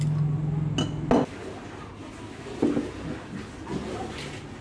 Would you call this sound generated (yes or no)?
no